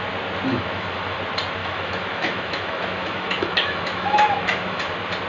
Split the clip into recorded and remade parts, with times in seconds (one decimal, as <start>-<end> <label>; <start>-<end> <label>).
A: 0.0-0.5 recorded; 0.5-1.2 remade; 1.2-1.6 recorded; 1.6-4.8 remade; 4.8-5.3 recorded